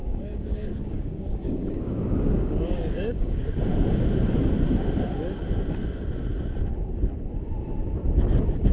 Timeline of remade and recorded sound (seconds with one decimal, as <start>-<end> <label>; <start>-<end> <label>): 0.0-3.5 remade; 3.5-8.7 recorded